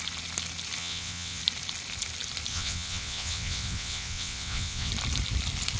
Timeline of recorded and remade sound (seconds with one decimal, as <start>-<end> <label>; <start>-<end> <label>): 0.0-0.8 recorded; 0.8-1.4 remade; 1.4-2.5 recorded; 2.5-4.9 remade; 4.9-5.8 recorded